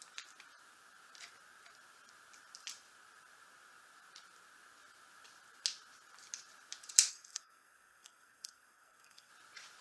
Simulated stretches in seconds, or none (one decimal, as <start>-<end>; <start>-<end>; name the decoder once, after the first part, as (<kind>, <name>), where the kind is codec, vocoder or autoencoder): 7.1-9.3 (codec, SNAC)